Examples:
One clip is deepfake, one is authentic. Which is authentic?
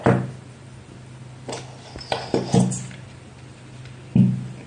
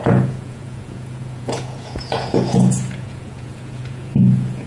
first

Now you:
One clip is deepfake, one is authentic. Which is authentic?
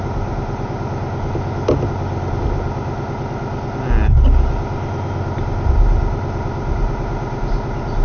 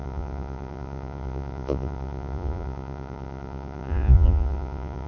first